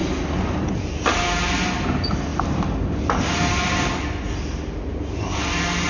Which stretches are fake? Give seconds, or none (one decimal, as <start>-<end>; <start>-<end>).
none